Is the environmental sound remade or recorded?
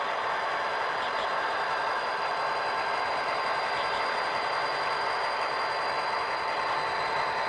recorded